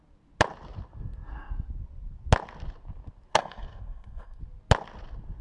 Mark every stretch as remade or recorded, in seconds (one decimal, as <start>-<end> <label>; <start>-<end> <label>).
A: 0.0-3.3 recorded; 3.3-4.4 remade; 4.4-5.4 recorded